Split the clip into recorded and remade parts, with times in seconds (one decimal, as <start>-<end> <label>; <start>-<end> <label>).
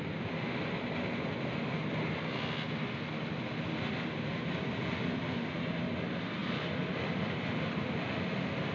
0.0-8.7 recorded